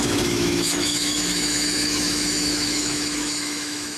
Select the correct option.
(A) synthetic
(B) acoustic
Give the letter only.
A